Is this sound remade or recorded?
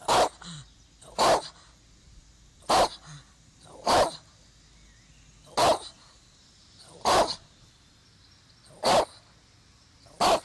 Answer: recorded